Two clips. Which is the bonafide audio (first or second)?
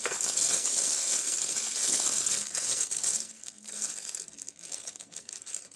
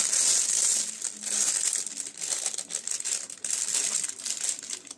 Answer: second